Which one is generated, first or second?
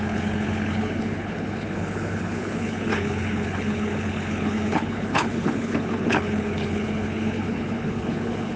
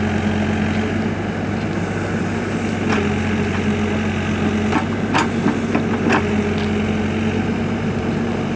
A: first